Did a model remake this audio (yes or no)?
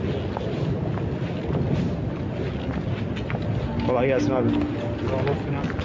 no